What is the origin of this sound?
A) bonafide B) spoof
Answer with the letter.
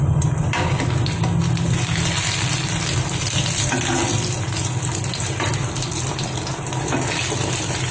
A